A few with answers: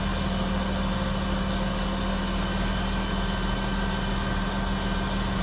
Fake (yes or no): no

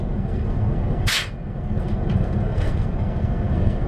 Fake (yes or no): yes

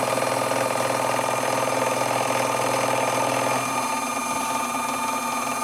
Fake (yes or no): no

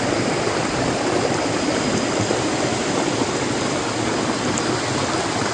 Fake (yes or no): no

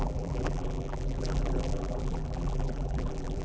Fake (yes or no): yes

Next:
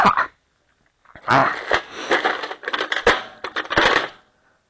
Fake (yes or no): no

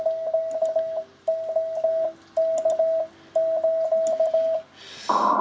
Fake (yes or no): no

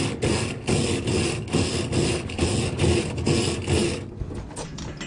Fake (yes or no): no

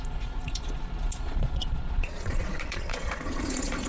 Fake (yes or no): yes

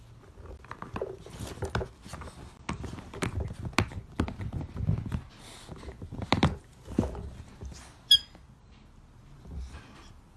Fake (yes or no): no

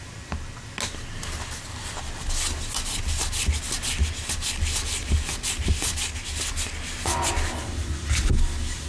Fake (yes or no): no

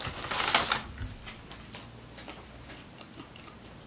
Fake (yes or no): no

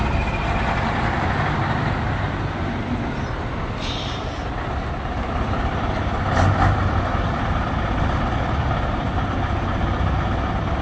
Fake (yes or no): no